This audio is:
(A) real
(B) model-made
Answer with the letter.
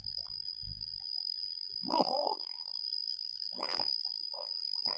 B